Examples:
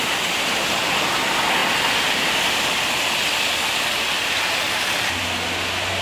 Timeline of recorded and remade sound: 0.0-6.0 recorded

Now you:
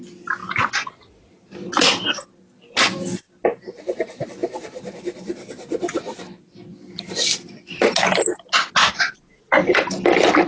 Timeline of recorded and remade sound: 0.0-8.8 recorded; 8.8-9.4 remade; 9.4-10.5 recorded